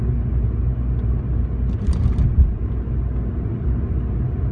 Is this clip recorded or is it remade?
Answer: recorded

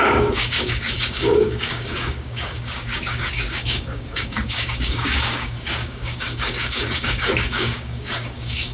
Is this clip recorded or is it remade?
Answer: remade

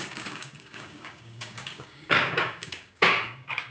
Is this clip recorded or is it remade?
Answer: remade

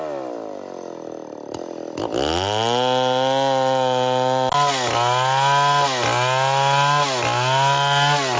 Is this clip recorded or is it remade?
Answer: recorded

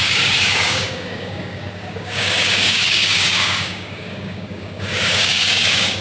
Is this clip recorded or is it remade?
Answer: remade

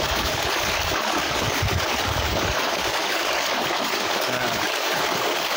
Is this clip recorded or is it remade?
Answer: remade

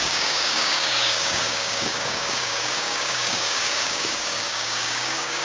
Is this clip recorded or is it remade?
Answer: remade